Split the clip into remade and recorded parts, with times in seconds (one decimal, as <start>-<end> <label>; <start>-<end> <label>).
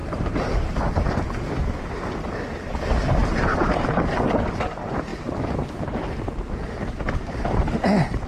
0.0-1.2 remade; 1.2-8.3 recorded